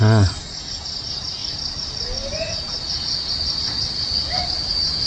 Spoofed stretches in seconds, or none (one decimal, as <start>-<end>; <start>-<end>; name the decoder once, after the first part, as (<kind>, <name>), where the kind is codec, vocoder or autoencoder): 1.4-4.5 (vocoder, BigVGAN v2)